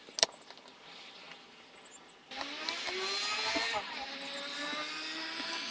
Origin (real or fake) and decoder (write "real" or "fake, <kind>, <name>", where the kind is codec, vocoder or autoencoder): real